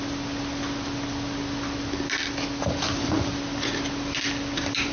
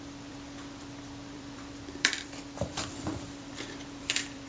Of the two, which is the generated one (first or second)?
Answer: second